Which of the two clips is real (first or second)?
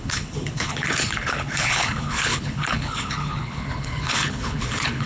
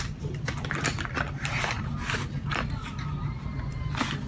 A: second